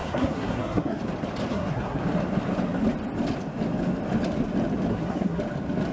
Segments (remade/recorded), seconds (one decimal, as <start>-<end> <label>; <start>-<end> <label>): 0.0-1.0 remade; 1.0-1.5 recorded; 1.5-2.0 remade; 2.0-4.9 recorded; 4.9-5.4 remade; 5.4-5.9 recorded